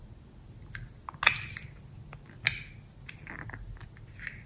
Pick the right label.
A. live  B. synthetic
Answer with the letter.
A